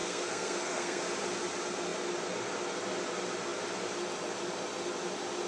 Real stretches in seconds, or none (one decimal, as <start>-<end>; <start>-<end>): 1.0-5.5